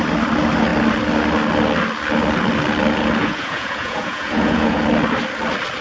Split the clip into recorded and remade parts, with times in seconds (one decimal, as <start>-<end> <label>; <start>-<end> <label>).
0.0-3.2 recorded; 3.2-4.8 remade; 4.8-5.8 recorded